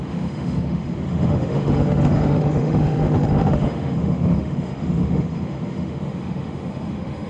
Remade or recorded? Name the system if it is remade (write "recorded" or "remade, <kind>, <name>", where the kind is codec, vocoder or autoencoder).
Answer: remade, autoencoder, DAC-VAE